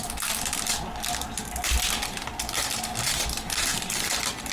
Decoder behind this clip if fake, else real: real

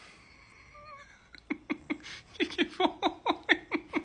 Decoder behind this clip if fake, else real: real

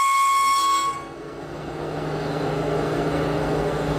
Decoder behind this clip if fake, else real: fake, codec, SNAC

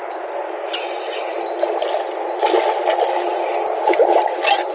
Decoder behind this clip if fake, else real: real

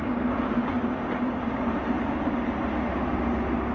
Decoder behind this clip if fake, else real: real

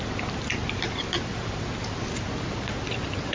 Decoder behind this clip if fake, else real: real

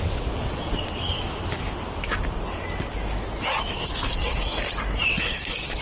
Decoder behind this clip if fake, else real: real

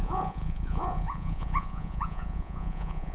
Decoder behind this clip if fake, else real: fake, vocoder, Vocos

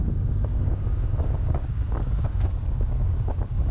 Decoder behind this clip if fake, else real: fake, codec, DAC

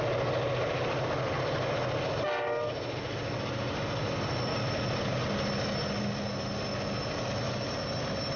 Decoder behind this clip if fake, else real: real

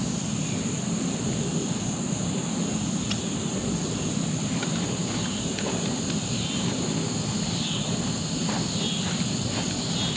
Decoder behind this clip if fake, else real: real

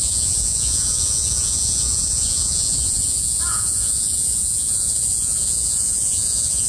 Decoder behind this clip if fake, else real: fake, vocoder, Vocos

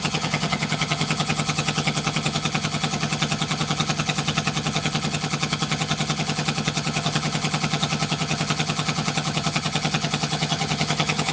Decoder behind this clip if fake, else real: fake, vocoder, HiFi-GAN